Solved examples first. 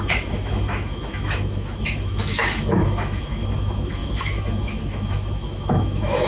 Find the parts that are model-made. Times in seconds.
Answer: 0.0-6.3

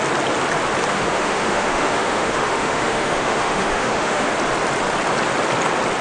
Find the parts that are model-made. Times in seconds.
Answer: 0.9-4.3

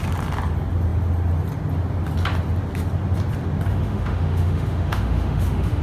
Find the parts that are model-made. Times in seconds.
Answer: 3.7-5.8

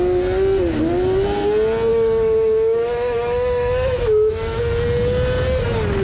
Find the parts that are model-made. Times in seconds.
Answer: 1.9-4.6